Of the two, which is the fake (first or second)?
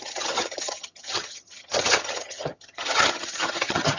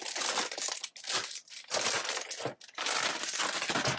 first